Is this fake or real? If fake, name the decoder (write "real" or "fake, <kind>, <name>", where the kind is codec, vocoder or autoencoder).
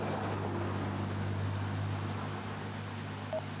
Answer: real